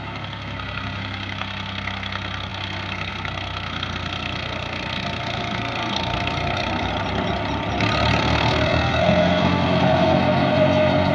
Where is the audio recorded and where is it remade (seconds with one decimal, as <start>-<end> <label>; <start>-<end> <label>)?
0.0-6.9 remade; 6.9-8.2 recorded; 8.2-11.1 remade